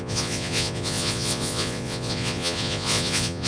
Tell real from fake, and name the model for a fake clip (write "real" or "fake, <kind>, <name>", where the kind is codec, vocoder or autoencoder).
fake, vocoder, Vocos